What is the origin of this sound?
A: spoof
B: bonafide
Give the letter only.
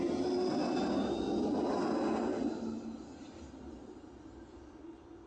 B